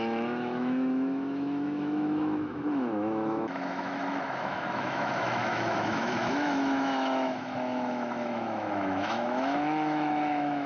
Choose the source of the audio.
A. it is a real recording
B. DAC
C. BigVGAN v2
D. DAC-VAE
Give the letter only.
D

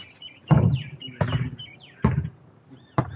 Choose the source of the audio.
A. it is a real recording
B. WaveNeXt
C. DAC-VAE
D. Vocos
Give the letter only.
A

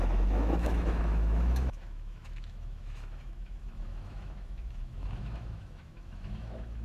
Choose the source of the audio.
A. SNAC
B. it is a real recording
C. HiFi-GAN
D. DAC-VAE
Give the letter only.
D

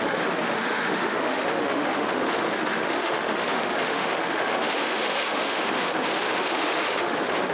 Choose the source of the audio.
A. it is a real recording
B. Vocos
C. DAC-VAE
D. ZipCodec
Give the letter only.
C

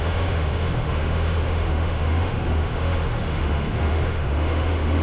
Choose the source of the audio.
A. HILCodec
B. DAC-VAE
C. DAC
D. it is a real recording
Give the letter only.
B